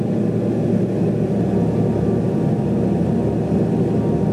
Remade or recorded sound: recorded